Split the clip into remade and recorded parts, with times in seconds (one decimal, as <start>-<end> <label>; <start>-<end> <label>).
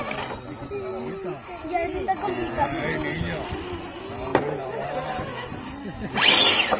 0.0-6.8 recorded